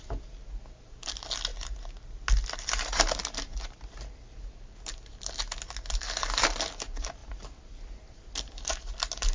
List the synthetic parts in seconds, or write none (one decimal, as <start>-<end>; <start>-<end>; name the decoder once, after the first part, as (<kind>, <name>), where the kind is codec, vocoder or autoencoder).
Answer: none